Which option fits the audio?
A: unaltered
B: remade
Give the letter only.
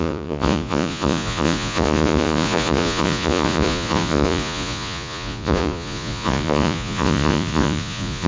B